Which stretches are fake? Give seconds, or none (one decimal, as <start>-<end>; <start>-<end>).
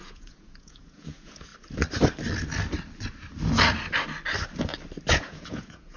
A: 0.0-1.5; 5.1-6.0